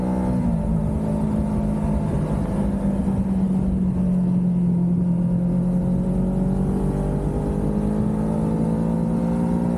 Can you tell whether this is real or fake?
real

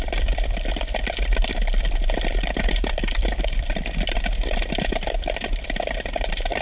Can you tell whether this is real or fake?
fake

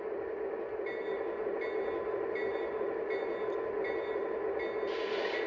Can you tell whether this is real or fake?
real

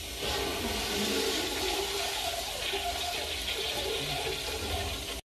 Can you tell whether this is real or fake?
real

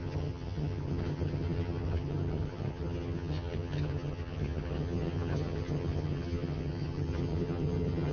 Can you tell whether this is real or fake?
fake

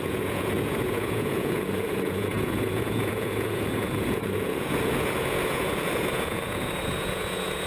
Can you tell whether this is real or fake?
fake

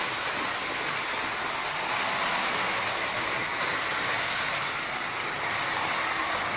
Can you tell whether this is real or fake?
real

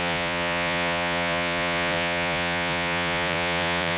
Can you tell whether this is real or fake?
fake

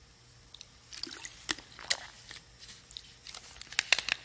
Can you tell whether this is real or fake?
real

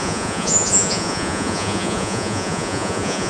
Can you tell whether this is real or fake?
fake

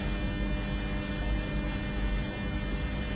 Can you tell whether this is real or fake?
real